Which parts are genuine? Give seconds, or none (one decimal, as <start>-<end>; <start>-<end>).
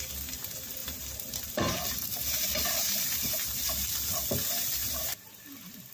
0.0-0.8; 4.3-4.8; 5.4-5.9